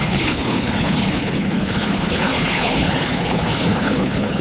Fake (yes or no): yes